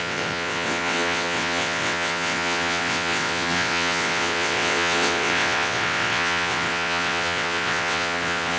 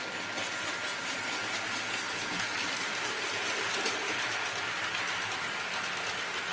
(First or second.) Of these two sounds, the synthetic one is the first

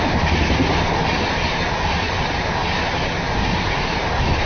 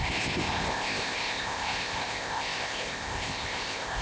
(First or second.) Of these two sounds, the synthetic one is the second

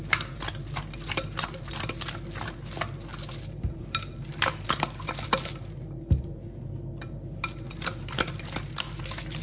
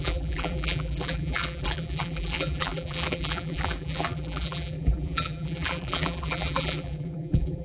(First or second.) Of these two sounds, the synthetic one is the second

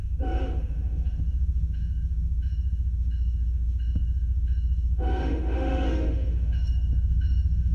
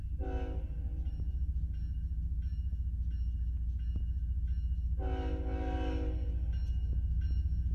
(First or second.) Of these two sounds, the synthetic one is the first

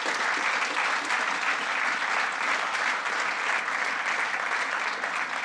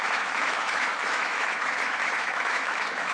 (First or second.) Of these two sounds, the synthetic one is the second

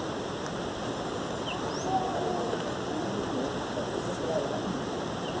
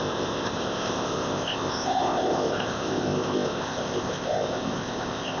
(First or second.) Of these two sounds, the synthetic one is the second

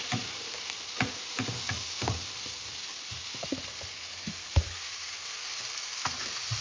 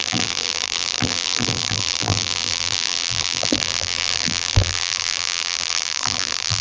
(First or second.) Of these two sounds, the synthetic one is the second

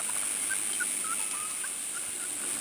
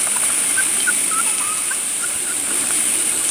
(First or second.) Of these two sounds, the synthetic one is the second